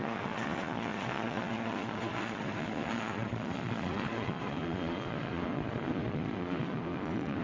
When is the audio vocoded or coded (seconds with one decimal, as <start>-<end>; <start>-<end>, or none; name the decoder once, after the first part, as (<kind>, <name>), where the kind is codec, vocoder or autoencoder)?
0.0-7.4 (vocoder, Vocos)